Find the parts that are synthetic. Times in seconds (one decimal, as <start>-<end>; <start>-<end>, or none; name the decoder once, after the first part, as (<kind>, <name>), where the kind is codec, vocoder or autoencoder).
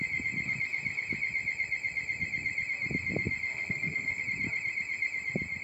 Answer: 3.5-4.2 (codec, SNAC)